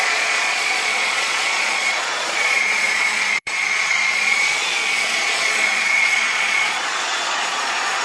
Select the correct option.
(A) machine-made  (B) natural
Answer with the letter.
A